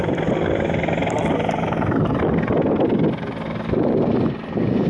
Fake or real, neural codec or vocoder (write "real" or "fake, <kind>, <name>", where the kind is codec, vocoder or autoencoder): real